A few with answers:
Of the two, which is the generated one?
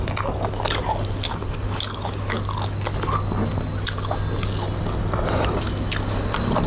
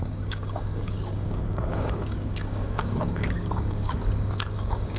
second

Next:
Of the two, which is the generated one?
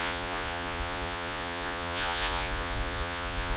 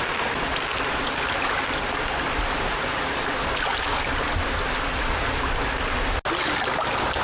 first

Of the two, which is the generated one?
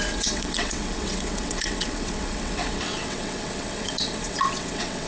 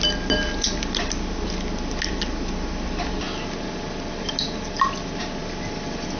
first